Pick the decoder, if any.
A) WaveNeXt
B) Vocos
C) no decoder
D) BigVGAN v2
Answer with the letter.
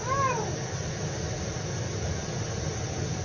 C